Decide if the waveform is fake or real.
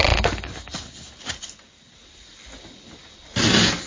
real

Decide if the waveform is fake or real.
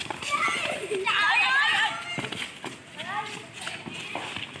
real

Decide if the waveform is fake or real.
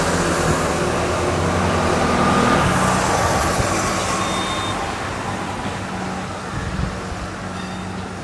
real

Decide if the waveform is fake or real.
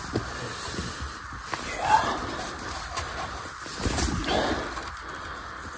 real